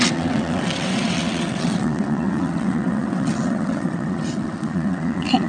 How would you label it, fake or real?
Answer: fake